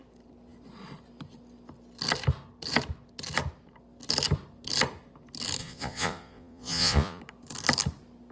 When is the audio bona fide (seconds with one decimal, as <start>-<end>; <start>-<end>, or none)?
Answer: 0.0-5.6; 7.2-8.3